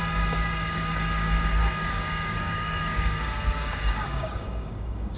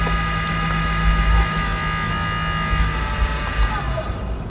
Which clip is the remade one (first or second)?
first